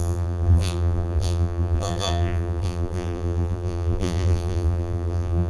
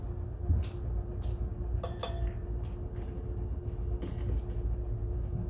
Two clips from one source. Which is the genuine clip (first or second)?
second